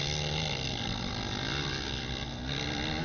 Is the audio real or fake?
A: real